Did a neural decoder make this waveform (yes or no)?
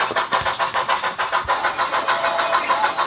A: no